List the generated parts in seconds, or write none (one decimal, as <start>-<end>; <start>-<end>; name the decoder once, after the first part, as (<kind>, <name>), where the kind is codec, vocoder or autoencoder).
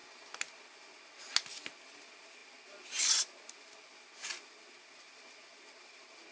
none